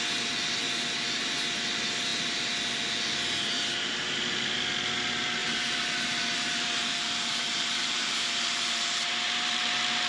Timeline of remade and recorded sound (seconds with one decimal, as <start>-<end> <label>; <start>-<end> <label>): 0.0-5.4 recorded; 5.4-9.7 remade; 9.7-10.1 recorded